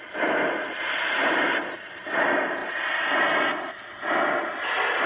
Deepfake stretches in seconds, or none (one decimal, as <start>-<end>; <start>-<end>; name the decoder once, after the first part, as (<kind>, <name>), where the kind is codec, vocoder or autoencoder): 0.6-2.0 (vocoder, BigVGAN v2)